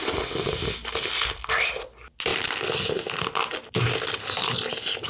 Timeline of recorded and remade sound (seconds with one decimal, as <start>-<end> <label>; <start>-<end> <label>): 0.0-5.1 recorded